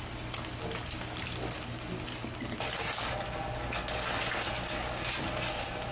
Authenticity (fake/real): real